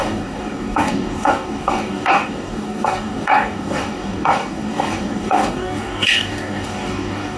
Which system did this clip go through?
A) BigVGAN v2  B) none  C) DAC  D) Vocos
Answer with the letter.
C